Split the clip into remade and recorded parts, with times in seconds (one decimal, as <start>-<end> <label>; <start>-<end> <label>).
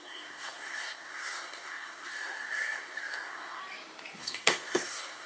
0.0-3.6 remade; 3.6-4.2 recorded; 4.2-5.3 remade